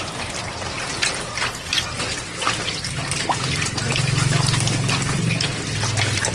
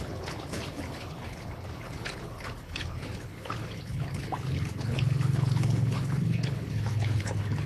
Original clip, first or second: first